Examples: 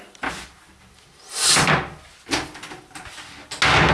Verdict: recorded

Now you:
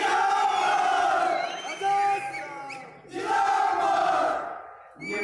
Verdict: recorded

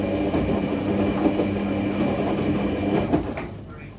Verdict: recorded